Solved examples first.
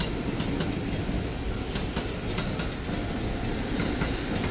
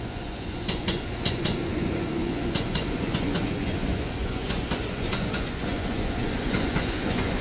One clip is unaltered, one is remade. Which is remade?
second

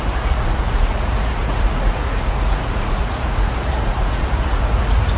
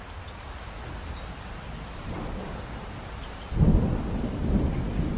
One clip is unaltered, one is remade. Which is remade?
first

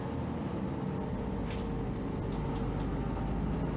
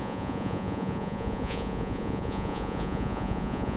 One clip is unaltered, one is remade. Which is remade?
second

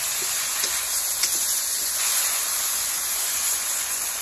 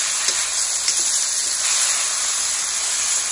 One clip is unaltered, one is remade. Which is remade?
first